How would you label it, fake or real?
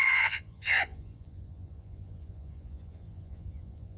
fake